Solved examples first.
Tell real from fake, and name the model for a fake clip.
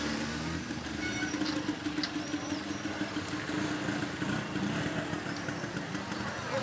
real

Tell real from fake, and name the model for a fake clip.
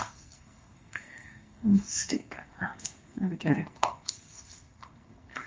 fake, codec, SNAC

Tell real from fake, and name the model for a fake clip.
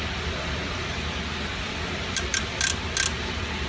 real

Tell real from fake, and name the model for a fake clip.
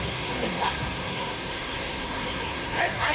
fake, codec, SNAC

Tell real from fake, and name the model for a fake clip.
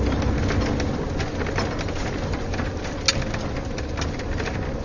real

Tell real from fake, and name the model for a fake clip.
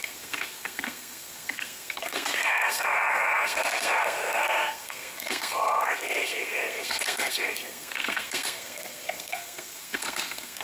fake, codec, SNAC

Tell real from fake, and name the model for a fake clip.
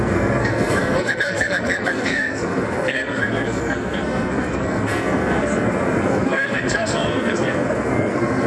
fake, codec, SNAC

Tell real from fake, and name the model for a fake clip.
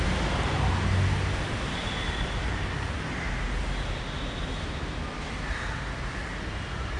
real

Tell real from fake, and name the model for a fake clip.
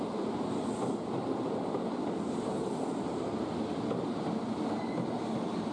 real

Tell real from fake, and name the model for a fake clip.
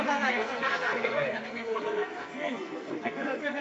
fake, codec, SNAC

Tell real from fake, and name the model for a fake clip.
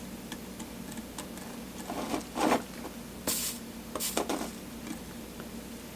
real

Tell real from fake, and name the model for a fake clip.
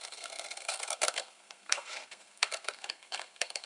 fake, codec, SNAC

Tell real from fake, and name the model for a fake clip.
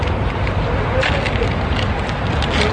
real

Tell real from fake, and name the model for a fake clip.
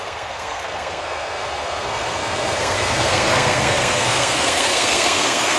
fake, codec, SNAC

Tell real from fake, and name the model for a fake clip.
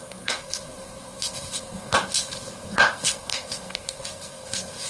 fake, codec, SNAC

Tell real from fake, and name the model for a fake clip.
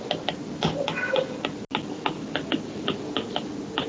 real